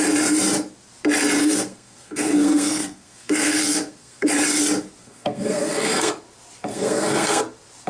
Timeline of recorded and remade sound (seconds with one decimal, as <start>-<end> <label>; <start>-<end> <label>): 0.0-1.4 recorded; 1.4-4.3 remade; 4.3-5.0 recorded; 5.0-6.1 remade; 6.1-6.7 recorded; 6.7-7.4 remade; 7.4-7.9 recorded